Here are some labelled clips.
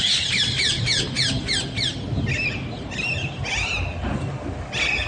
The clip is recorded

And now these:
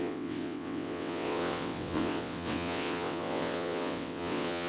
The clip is remade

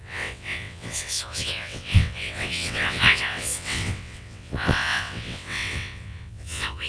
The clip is remade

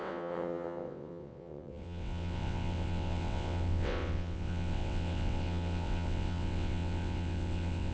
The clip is remade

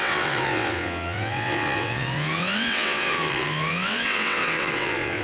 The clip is remade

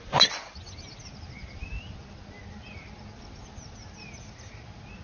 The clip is recorded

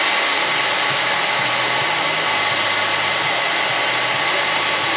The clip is recorded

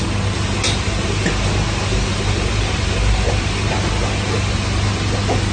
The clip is recorded